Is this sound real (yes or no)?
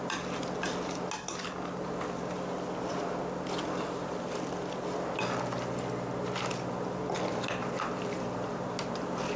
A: yes